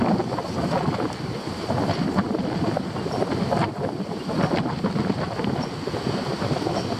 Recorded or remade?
recorded